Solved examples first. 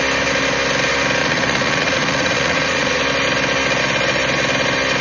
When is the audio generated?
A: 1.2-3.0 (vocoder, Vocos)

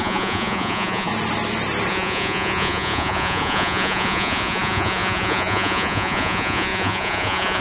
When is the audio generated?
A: 0.0-1.1 (vocoder, Vocos); 1.9-7.6

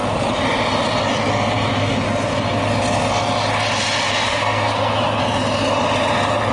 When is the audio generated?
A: 4.3-5.2 (codec, SNAC)

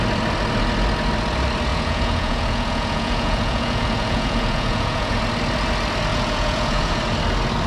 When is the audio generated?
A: 1.7-5.2 (vocoder, Vocos); 6.1-7.0

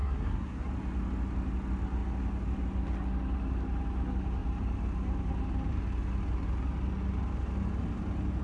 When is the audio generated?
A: 0.0-0.7 (codec, SNAC)